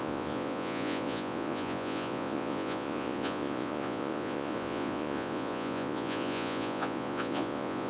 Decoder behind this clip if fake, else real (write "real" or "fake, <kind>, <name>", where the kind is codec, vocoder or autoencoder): fake, vocoder, Vocos